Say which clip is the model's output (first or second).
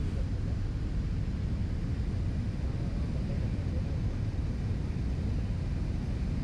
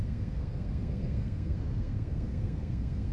second